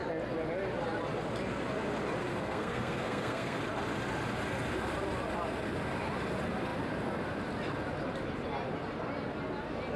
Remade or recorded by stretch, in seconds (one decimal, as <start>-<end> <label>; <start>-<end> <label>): 0.0-2.3 recorded; 2.3-3.6 remade; 3.6-10.0 recorded